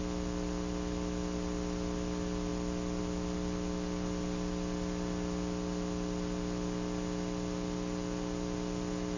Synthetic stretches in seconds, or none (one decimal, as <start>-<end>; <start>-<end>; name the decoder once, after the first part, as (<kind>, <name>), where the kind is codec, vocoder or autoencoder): none